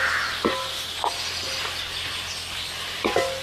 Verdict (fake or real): real